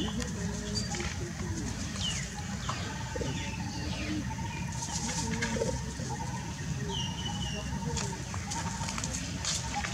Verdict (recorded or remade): recorded